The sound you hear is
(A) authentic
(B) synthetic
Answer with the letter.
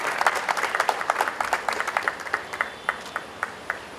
B